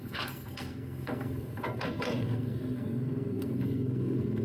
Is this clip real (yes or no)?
no